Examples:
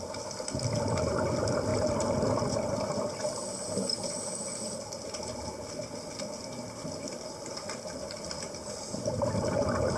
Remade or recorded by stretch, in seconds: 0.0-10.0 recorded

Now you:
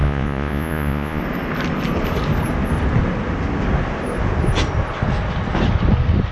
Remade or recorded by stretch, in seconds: 0.0-1.2 remade; 1.2-6.3 recorded

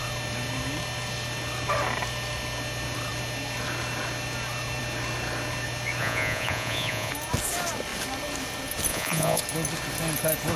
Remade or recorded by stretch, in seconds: 0.0-6.0 recorded; 6.0-7.1 remade; 7.1-8.9 recorded; 8.9-9.4 remade; 9.4-10.6 recorded

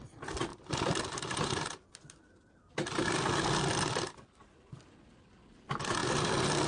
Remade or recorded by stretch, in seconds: 0.0-6.7 recorded

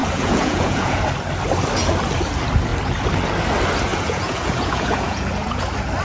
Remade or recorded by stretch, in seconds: 0.0-1.0 remade; 1.0-3.9 recorded; 3.9-5.6 remade; 5.6-6.0 recorded